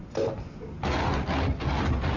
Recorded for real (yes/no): yes